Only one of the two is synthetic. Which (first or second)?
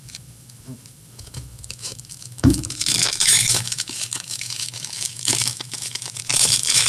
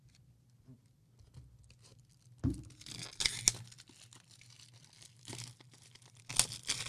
first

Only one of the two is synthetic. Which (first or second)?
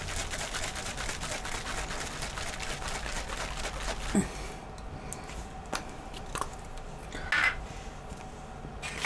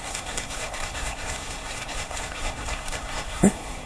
second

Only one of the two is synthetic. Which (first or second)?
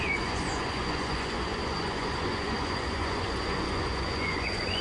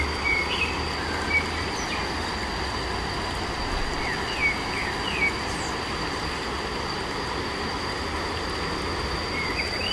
first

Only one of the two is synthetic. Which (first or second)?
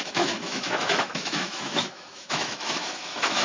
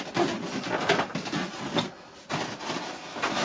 first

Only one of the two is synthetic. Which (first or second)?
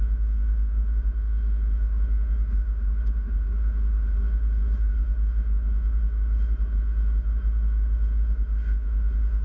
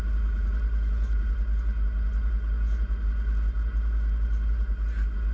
first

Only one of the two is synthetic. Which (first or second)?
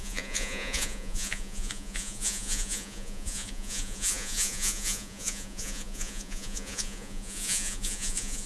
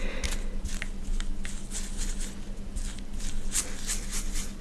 first